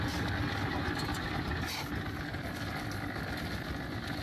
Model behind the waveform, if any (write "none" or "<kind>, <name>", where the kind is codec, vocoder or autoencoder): none